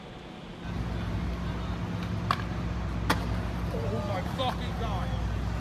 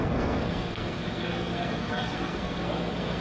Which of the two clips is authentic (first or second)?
first